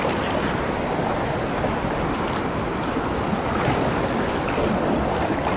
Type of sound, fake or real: real